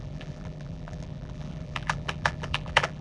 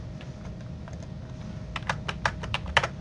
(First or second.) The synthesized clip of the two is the first